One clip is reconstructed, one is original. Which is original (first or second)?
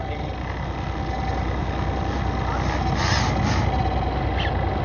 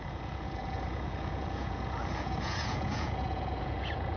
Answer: first